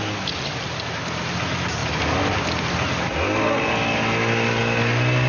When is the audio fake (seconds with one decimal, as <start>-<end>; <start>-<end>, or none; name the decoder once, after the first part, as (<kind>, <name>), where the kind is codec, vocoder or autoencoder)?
none